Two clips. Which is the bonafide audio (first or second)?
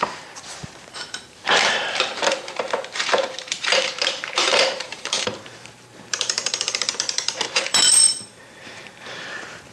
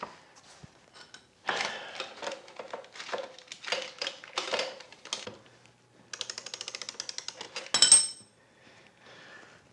second